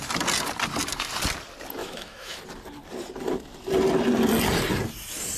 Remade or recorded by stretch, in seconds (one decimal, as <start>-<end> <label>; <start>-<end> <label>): 0.0-1.8 recorded; 1.8-2.4 remade; 2.4-5.4 recorded